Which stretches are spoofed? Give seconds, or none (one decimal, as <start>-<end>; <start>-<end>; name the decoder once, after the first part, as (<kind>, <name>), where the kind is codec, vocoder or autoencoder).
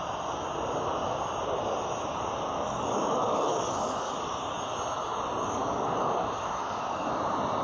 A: 2.5-4.1 (codec, DAC); 5.4-7.1